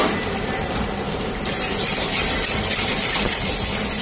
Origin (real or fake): fake